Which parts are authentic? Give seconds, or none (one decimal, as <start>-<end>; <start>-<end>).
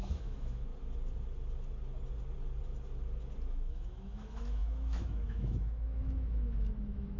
0.7-3.7